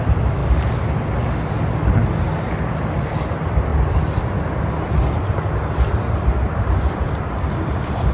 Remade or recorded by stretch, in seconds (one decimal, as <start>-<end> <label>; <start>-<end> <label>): 0.0-0.4 remade; 0.4-2.5 recorded; 2.5-8.1 remade